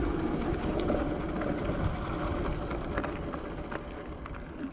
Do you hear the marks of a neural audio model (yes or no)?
no